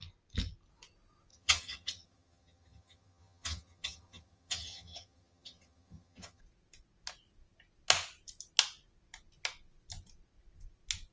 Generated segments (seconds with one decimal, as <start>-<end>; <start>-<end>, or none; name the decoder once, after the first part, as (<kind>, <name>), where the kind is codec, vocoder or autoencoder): 1.3-6.4 (vocoder, HiFi-GAN)